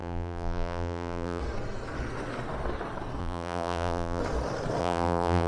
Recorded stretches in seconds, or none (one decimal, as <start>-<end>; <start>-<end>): 1.4-3.2; 4.2-4.8